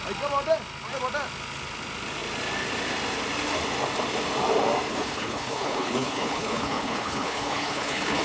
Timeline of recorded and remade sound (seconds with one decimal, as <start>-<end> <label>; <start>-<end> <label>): 0.0-4.9 recorded; 4.9-8.2 remade